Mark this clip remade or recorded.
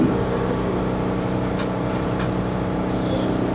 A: recorded